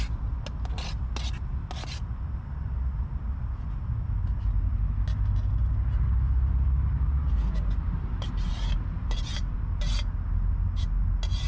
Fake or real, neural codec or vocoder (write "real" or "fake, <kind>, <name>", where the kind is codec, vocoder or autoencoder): real